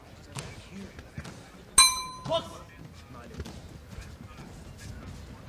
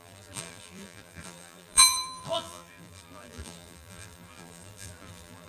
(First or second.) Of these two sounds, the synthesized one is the second